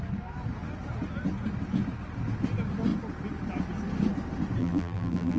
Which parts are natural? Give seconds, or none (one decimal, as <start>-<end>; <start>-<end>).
0.0-4.6

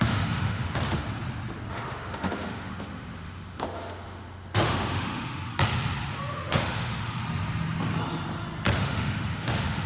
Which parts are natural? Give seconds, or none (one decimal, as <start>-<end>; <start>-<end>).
1.0-1.7; 5.5-6.3; 7.2-8.8